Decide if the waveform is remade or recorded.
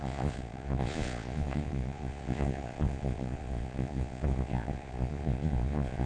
remade